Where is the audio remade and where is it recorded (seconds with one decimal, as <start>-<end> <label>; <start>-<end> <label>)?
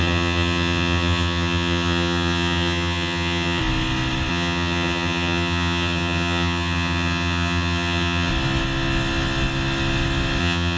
0.0-3.6 remade; 3.6-4.3 recorded; 4.3-8.3 remade; 8.3-10.4 recorded; 10.4-10.8 remade